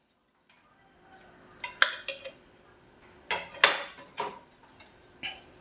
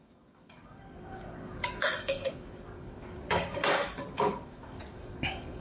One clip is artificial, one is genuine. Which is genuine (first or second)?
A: first